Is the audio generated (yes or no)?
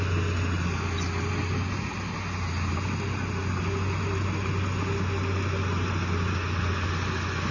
no